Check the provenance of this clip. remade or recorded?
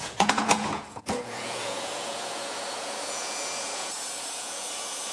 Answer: remade